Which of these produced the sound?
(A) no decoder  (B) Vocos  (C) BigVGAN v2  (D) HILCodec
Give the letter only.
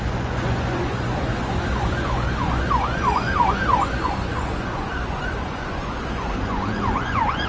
B